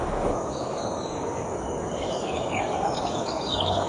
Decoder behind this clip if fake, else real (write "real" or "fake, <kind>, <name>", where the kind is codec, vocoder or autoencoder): fake, codec, DAC